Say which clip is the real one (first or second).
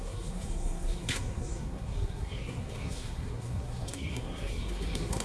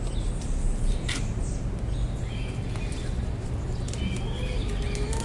second